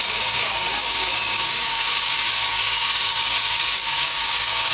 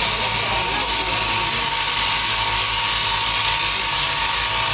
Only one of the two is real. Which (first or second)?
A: second